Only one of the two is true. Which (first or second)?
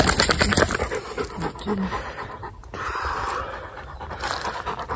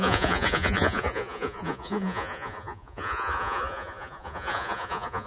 first